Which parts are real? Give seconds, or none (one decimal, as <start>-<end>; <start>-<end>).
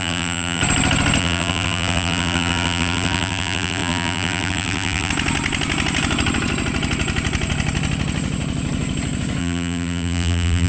0.6-1.2; 5.1-9.4